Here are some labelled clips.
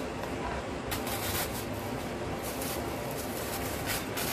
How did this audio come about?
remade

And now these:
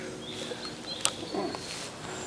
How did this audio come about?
recorded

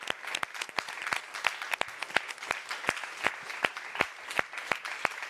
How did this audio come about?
recorded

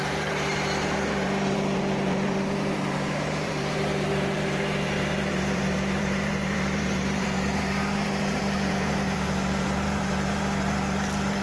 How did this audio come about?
remade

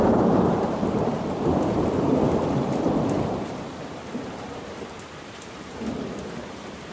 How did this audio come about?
remade